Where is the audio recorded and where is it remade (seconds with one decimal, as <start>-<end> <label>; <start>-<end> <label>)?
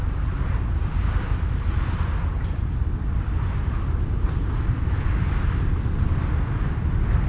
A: 0.0-1.3 remade; 1.3-2.8 recorded; 2.8-7.3 remade